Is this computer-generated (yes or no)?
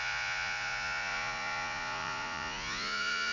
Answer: yes